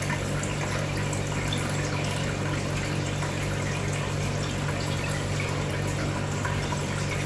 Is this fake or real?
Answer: real